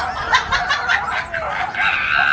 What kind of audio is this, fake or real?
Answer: real